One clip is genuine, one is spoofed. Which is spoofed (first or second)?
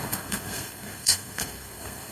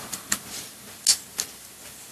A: first